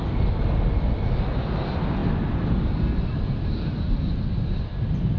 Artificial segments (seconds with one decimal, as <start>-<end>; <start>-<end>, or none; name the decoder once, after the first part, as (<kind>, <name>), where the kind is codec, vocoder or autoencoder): none